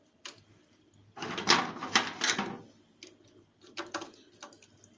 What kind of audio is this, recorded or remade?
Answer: recorded